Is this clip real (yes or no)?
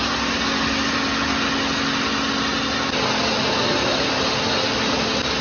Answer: yes